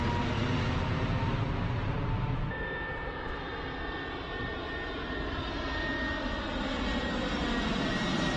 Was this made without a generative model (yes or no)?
yes